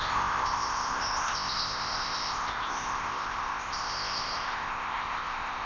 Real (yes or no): no